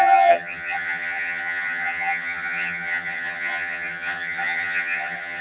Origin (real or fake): fake